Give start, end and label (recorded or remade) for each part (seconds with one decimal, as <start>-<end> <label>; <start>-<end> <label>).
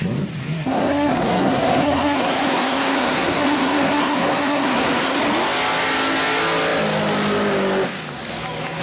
0.0-0.4 recorded; 0.4-5.2 remade; 5.2-8.8 recorded